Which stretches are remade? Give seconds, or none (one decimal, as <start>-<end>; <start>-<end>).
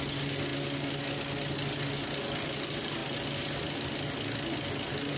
none